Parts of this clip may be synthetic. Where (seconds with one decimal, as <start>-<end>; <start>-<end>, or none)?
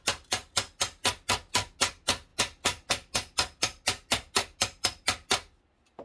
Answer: none